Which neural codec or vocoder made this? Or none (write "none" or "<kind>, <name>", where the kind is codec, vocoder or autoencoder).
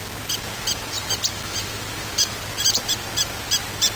none